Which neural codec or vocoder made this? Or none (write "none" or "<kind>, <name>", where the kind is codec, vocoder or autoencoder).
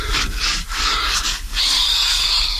codec, DAC